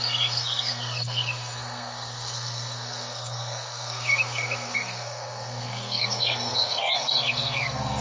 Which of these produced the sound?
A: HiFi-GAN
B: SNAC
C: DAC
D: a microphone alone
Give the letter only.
B